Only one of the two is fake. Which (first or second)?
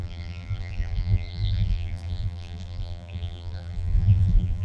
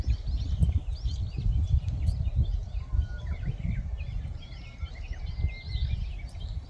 first